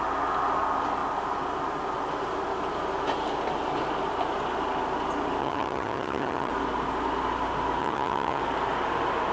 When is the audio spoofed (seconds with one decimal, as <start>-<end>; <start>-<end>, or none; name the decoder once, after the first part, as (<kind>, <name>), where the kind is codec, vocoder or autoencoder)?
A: 5.4-6.5 (vocoder, HiFi-GAN); 7.8-8.4